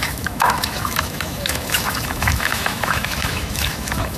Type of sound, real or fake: fake